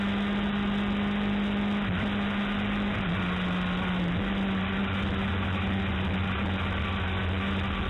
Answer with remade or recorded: recorded